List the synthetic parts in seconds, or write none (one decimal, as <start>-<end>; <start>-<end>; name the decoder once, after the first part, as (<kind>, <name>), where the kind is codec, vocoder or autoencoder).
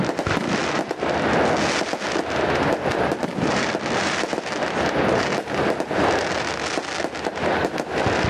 0.6-1.3 (vocoder, BigVGAN v2); 2.9-5.4